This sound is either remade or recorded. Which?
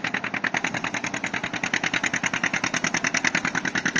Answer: recorded